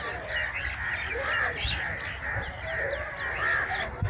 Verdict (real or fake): real